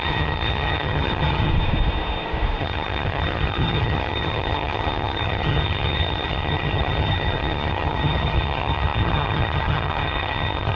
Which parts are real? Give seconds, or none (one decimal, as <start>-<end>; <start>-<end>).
1.5-2.6